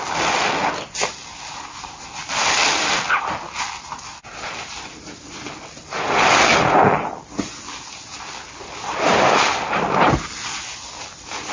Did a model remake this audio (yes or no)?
no